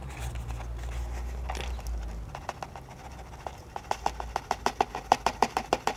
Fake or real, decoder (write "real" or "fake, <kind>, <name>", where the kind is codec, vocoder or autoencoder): real